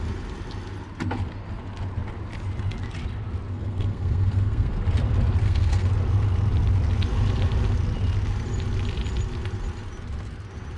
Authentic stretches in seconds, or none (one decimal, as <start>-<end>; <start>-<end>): 0.0-3.5; 4.8-5.4; 5.9-10.8